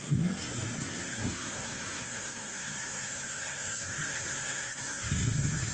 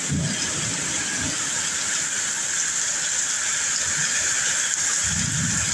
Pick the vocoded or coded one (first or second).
first